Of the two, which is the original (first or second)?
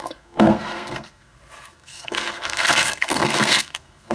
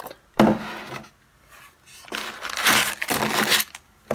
second